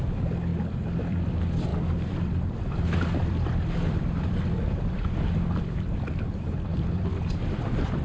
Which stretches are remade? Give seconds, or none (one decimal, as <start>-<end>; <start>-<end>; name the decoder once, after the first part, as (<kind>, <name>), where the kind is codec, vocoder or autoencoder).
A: 0.0-0.5 (vocoder, BigVGAN v2); 1.0-1.7; 2.6-8.0